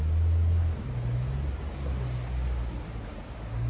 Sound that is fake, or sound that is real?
real